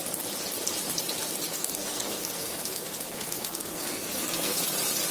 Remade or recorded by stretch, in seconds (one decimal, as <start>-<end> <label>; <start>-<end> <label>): 0.0-1.5 recorded; 1.5-4.6 remade; 4.6-5.1 recorded